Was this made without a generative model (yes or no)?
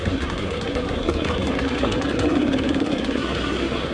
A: no